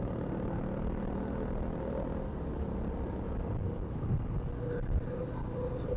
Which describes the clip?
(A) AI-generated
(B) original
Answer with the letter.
B